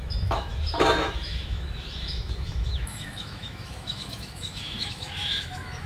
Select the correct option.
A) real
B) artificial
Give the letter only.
B